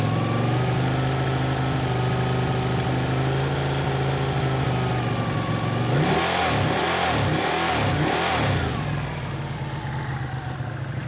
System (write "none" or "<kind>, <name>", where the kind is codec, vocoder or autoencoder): none